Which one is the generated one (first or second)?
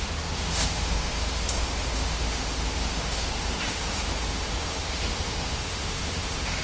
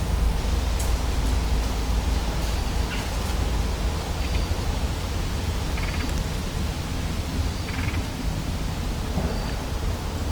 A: first